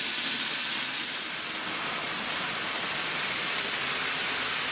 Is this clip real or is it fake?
real